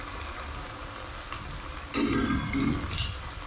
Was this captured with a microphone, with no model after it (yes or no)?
yes